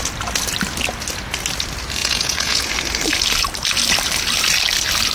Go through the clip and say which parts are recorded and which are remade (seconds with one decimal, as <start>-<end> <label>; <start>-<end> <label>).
0.0-2.0 recorded; 2.0-2.6 remade; 2.6-5.1 recorded